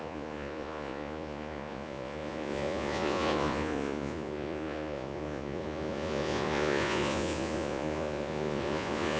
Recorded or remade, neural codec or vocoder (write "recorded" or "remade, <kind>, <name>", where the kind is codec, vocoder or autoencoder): remade, vocoder, Vocos